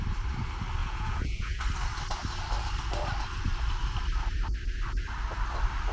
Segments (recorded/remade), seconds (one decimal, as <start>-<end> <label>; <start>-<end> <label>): 0.0-0.8 recorded; 0.8-1.6 remade; 1.6-5.9 recorded